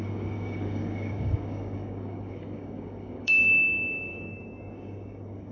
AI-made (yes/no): yes